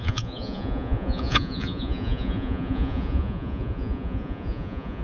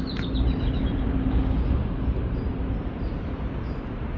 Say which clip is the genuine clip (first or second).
second